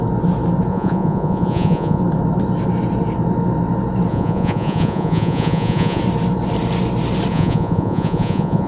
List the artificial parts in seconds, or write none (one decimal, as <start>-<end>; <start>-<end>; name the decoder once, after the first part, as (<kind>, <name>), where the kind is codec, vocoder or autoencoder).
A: 0.7-2.0 (vocoder, Vocos); 4.1-6.0; 7.3-8.7